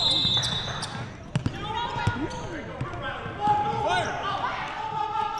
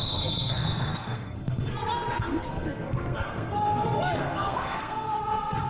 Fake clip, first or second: second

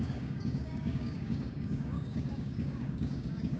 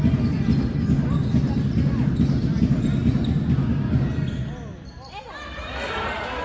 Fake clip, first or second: first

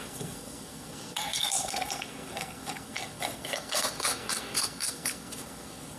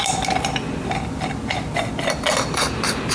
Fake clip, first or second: first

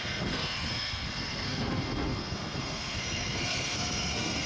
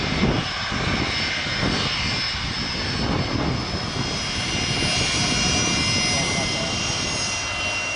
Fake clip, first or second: first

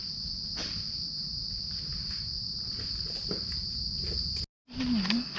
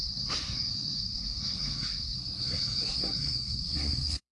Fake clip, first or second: second